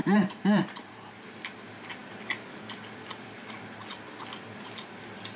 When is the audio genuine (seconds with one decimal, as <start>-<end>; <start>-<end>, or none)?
1.1-5.4